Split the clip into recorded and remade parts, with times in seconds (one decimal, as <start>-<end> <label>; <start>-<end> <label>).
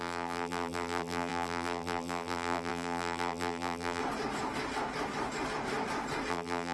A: 0.0-4.0 remade; 4.0-6.3 recorded; 6.3-6.7 remade